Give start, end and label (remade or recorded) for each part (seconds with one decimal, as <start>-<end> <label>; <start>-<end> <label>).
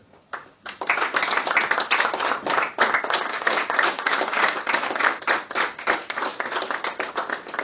0.0-3.3 recorded; 3.3-5.2 remade; 5.2-7.6 recorded